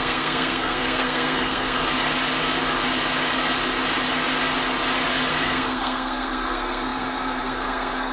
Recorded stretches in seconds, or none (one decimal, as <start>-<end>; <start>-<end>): 1.8-5.3

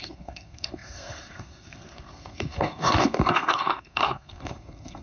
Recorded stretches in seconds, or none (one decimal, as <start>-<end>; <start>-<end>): none